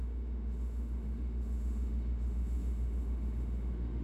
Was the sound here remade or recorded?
remade